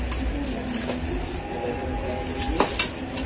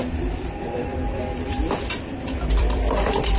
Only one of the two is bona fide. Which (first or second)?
first